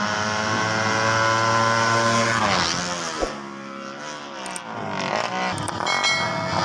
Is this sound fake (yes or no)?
no